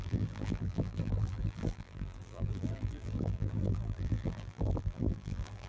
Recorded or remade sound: remade